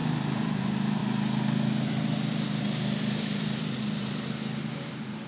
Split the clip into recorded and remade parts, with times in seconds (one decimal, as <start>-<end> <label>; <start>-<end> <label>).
0.0-1.0 remade; 1.0-3.3 recorded; 3.3-5.3 remade